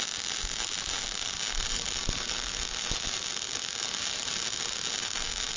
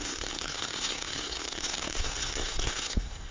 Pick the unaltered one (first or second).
first